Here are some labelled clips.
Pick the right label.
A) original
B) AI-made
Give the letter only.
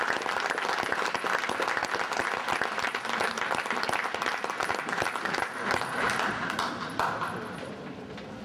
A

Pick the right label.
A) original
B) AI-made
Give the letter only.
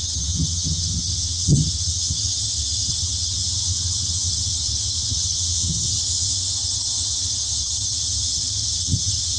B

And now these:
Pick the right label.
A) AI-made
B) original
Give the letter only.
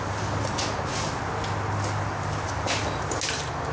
B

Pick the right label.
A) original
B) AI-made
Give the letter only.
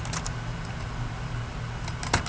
A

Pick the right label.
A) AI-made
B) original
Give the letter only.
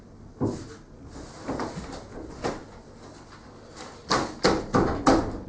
B